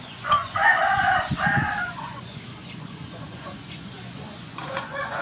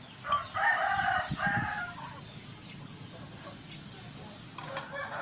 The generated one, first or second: first